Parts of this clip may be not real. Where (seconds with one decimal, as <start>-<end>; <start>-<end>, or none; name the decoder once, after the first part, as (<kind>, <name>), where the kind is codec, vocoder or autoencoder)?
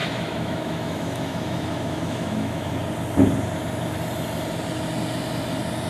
0.0-2.7 (autoencoder, DAC-VAE)